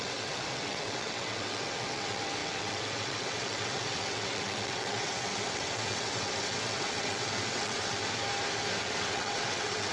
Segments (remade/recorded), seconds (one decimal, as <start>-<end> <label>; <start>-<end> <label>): 0.0-8.0 remade; 8.0-8.8 recorded; 8.8-9.9 remade